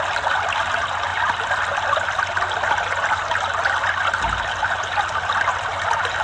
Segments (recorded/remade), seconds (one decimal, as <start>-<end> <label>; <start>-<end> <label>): 0.0-6.2 recorded